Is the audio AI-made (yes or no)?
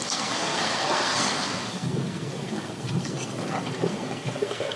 yes